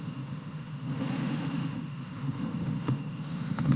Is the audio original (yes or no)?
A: no